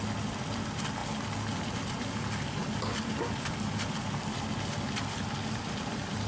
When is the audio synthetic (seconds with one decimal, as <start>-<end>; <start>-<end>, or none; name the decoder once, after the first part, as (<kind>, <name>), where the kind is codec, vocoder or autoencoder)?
0.0-1.0 (vocoder, BigVGAN v2); 1.7-6.3